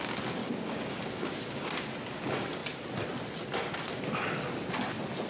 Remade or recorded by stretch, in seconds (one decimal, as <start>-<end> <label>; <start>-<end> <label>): 0.0-0.4 recorded; 0.4-1.0 remade; 1.0-5.3 recorded